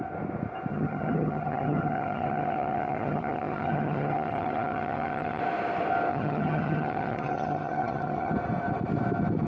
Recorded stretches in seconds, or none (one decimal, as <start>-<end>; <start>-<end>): 0.0-0.7; 5.4-6.1; 8.3-9.5